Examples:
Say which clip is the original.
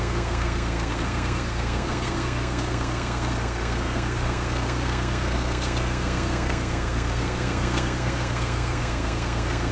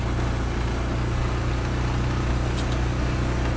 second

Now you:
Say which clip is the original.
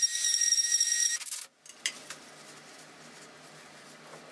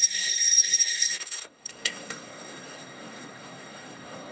first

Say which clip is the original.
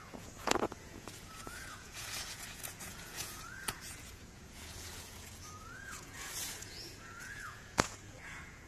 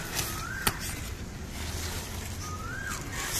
second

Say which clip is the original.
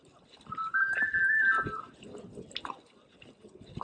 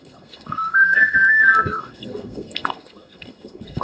first